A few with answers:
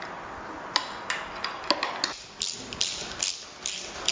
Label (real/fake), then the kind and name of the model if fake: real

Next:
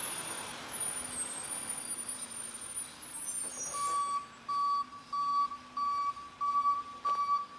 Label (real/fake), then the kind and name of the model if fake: real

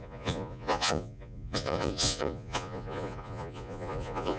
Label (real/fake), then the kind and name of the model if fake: fake, vocoder, Vocos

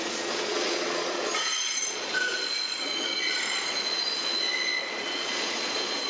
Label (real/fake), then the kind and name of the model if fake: fake, vocoder, Vocos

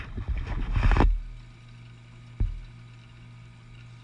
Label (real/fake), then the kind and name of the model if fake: real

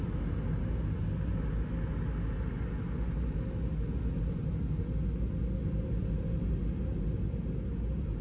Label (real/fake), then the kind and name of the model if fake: real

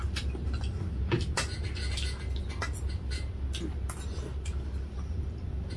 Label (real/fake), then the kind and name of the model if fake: real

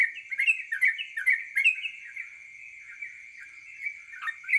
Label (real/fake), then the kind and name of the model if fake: real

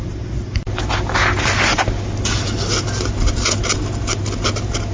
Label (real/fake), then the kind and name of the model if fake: real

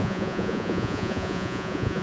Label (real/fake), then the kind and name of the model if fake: fake, vocoder, Vocos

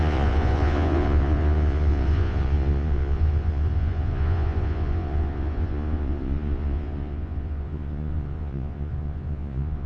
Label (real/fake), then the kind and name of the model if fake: fake, vocoder, Vocos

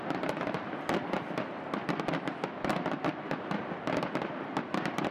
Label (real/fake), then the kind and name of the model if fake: real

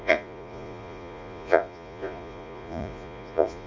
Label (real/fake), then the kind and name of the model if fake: fake, vocoder, Vocos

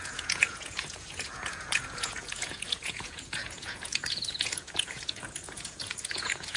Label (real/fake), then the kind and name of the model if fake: fake, vocoder, Vocos